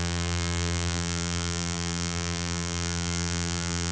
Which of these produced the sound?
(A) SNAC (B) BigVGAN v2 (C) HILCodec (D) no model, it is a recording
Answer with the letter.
B